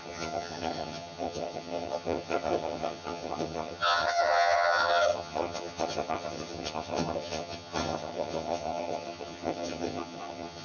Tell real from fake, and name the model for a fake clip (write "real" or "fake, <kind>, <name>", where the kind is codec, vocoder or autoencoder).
fake, vocoder, HiFi-GAN